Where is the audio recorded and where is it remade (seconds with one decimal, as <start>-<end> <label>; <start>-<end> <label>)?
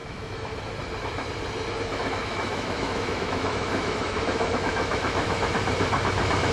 0.0-0.6 remade; 0.6-1.9 recorded; 1.9-5.5 remade; 5.5-6.5 recorded